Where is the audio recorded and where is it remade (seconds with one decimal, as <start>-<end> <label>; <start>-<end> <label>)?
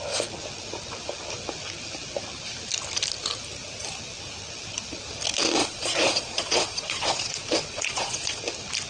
0.0-5.6 recorded; 5.6-8.4 remade; 8.4-8.9 recorded